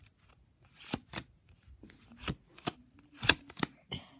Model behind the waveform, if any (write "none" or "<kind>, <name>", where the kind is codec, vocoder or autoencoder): none